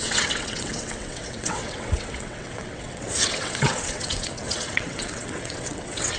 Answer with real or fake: fake